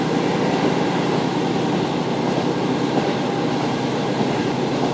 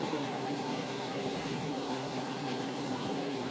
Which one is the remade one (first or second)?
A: second